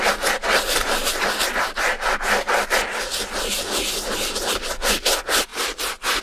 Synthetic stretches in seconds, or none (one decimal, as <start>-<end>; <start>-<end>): none